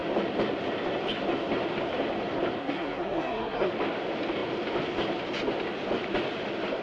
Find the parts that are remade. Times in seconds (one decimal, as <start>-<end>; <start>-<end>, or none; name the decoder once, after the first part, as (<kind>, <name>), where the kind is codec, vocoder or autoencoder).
2.6-3.7 (codec, SNAC)